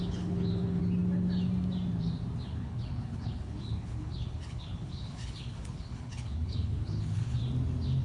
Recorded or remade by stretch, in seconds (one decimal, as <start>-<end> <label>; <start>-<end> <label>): 0.0-0.8 remade; 0.8-2.4 recorded; 2.4-7.4 remade; 7.4-8.0 recorded